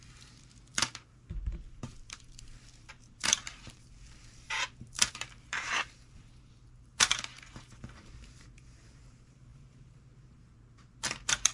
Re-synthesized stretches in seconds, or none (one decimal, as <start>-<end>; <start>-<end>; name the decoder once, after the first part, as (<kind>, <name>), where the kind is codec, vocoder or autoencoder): 0.0-11.5 (vocoder, BigVGAN v2)